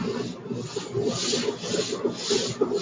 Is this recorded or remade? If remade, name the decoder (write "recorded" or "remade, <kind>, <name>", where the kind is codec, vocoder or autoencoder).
recorded